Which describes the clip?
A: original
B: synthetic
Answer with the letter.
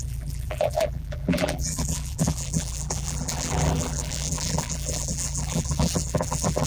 B